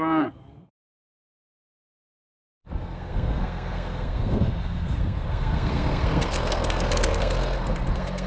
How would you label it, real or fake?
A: fake